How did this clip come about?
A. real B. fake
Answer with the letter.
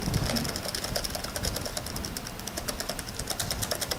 A